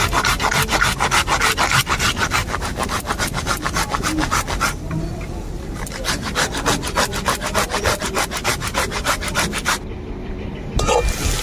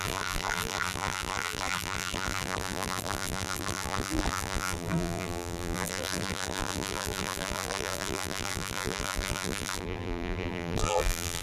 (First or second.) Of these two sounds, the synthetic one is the second